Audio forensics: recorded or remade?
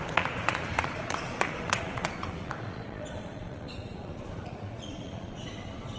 remade